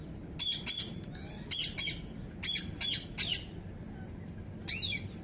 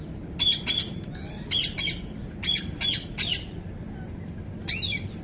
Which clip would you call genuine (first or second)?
first